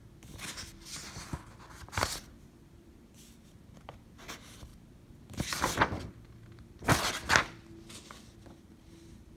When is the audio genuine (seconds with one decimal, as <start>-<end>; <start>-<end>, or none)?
0.0-4.7; 6.3-9.4